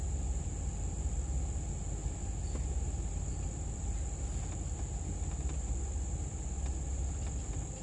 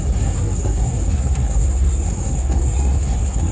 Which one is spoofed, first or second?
second